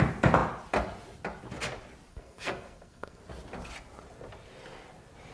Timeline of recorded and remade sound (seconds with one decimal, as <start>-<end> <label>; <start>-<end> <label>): 0.0-2.1 recorded; 2.1-3.2 remade; 3.2-5.3 recorded